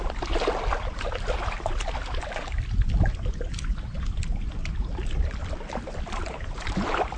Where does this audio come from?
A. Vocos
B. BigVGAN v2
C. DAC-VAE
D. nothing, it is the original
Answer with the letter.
B